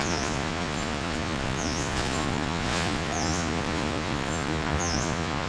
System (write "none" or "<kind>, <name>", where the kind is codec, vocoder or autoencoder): vocoder, Vocos